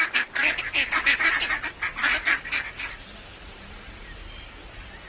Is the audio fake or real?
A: fake